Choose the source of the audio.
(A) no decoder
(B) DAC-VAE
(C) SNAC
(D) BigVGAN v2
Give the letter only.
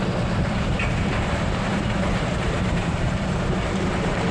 D